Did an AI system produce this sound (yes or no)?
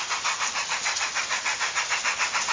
yes